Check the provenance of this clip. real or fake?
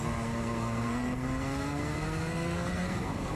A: fake